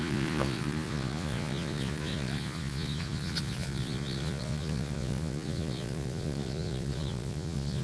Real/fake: fake